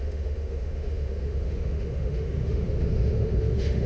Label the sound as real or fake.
fake